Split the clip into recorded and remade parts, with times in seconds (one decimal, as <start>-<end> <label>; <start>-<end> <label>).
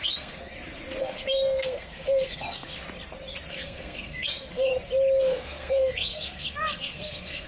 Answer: 0.0-0.5 remade; 0.5-1.0 recorded; 1.0-2.7 remade; 2.7-3.5 recorded; 3.5-4.7 remade; 4.7-5.2 recorded; 5.2-7.5 remade